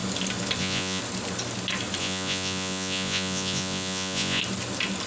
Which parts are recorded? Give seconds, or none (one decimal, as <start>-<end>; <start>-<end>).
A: 0.0-0.6; 1.0-2.0; 4.4-5.1